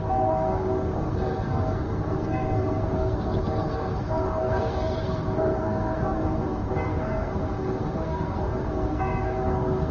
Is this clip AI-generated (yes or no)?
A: yes